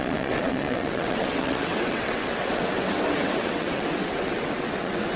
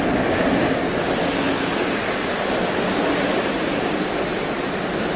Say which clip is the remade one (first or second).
first